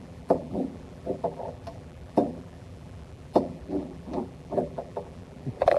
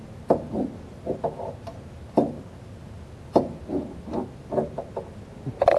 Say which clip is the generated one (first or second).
first